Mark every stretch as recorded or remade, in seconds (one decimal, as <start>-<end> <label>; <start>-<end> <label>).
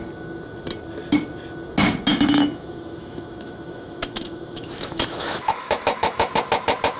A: 0.0-2.1 recorded; 2.1-6.3 remade; 6.3-7.0 recorded